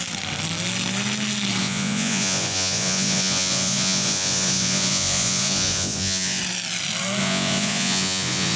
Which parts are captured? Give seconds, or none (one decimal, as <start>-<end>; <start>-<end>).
0.0-1.6; 6.4-7.2